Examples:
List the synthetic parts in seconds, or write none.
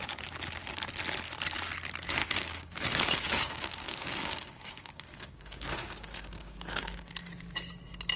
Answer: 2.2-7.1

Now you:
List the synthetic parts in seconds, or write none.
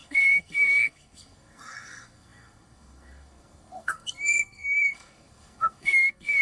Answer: 0.0-6.4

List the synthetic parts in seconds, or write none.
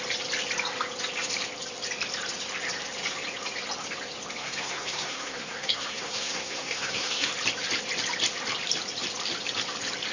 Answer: 4.4-7.3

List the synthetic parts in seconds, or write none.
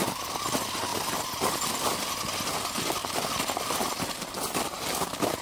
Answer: 0.9-1.7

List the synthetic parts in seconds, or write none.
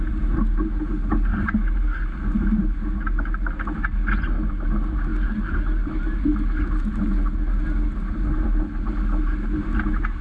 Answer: none